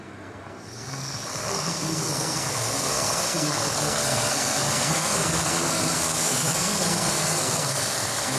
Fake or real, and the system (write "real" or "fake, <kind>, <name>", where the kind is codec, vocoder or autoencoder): fake, codec, SNAC